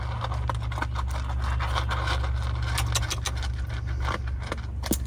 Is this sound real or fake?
real